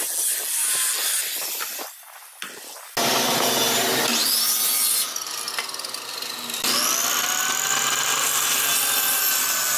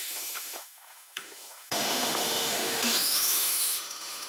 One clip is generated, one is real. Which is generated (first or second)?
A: second